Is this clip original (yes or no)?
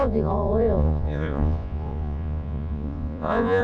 no